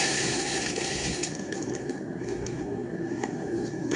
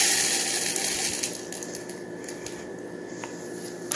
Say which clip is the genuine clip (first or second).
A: second